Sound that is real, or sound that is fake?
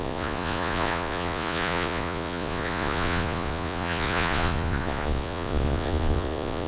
fake